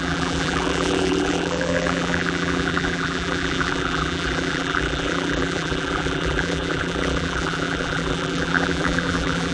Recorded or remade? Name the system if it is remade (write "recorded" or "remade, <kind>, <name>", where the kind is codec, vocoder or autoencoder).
remade, vocoder, BigVGAN v2